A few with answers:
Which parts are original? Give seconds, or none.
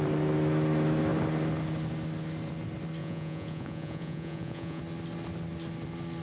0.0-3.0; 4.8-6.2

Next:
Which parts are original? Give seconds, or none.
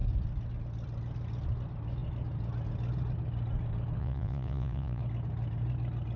0.0-4.0; 5.0-6.2